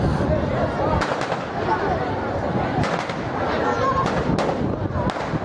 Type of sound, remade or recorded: recorded